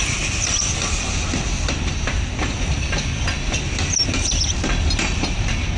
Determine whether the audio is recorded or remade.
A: recorded